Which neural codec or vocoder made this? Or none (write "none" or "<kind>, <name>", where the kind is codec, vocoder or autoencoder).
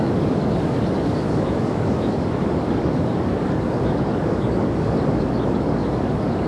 codec, DAC